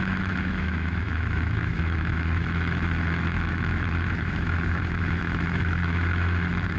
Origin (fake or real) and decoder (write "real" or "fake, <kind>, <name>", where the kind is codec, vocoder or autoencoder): fake, autoencoder, DAC-VAE